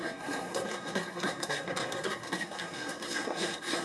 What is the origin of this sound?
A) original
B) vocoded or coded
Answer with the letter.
B